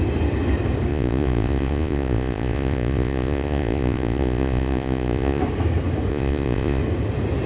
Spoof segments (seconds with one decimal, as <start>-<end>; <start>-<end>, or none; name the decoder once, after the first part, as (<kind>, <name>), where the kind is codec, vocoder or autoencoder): 0.9-5.4 (vocoder, Vocos); 6.1-6.8